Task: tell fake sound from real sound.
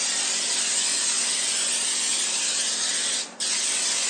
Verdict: real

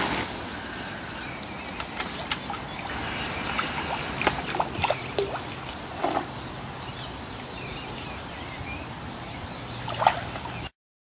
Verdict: real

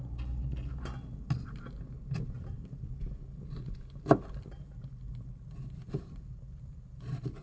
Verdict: real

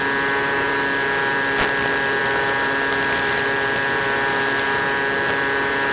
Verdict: real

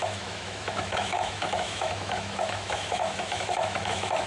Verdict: fake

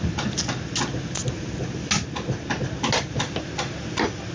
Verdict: real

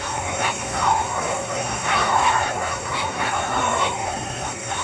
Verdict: fake